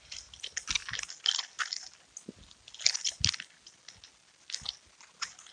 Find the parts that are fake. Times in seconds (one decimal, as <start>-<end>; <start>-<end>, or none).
none